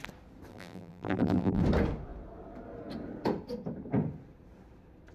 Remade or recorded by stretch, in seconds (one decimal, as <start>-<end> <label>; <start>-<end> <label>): 0.0-0.5 recorded; 0.5-1.6 remade; 1.6-5.1 recorded